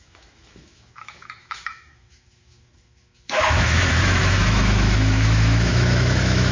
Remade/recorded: remade